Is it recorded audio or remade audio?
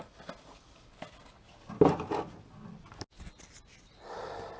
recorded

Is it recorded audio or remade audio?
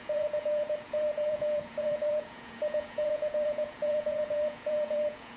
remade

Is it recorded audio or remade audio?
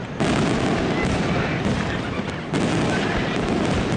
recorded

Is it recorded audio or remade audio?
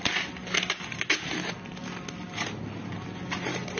recorded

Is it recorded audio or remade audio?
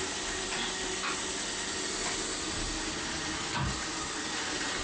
recorded